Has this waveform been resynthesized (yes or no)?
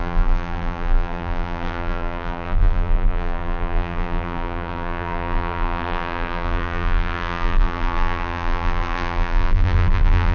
yes